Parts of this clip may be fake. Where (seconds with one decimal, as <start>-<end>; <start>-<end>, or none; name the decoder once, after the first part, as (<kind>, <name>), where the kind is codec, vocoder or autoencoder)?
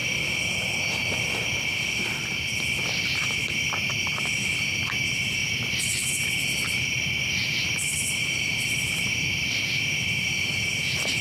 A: 5.4-6.1 (vocoder, BigVGAN v2); 7.4-11.2